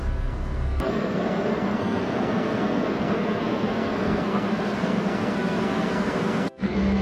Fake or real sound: fake